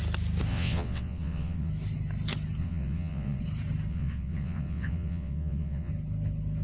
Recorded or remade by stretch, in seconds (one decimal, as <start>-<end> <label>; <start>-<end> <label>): 0.0-0.5 recorded; 0.5-1.7 remade; 1.7-2.6 recorded; 2.6-3.4 remade; 3.4-3.9 recorded; 3.9-5.9 remade; 5.9-6.6 recorded